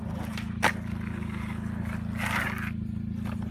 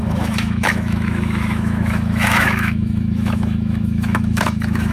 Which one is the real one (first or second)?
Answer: first